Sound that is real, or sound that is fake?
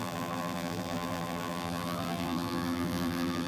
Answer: fake